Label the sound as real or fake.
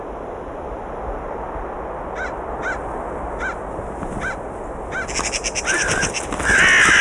real